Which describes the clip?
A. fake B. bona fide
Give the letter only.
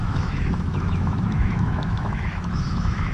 A